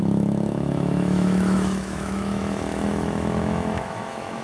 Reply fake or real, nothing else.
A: fake